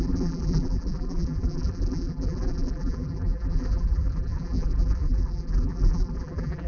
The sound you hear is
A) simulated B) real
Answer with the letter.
A